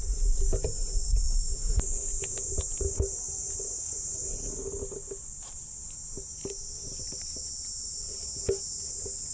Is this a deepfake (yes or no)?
no